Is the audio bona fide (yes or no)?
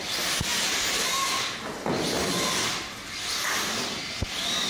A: yes